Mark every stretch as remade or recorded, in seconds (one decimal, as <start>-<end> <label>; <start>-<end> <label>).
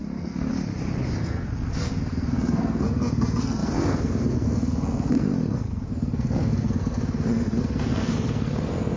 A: 0.0-0.5 remade; 0.5-1.2 recorded; 1.2-9.0 remade